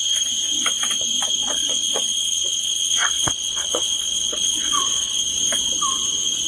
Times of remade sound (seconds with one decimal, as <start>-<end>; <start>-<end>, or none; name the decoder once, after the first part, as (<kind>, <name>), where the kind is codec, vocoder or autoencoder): 1.4-5.2 (vocoder, WaveNeXt)